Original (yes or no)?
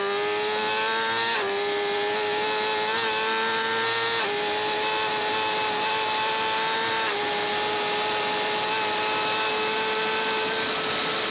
no